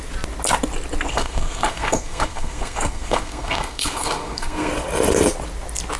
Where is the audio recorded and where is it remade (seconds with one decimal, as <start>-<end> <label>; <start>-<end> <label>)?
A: 0.0-1.1 recorded; 1.1-4.7 remade; 4.7-6.0 recorded